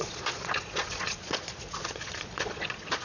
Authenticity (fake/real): fake